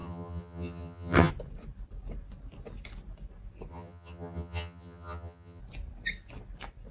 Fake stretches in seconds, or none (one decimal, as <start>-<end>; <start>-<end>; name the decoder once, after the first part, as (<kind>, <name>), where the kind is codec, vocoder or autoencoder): 0.0-1.3 (vocoder, HiFi-GAN); 3.7-5.6